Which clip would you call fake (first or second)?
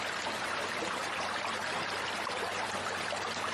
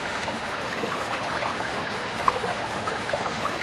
second